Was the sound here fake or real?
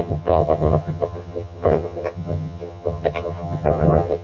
fake